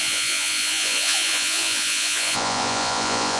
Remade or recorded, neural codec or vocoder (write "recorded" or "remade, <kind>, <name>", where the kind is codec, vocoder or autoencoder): remade, vocoder, Vocos